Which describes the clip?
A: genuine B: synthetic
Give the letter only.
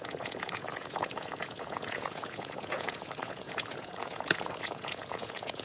B